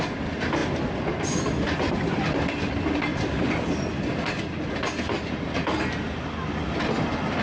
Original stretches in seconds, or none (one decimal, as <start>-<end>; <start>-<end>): 0.0-7.4